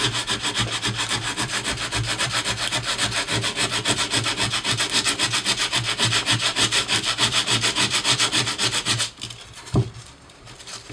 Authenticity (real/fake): real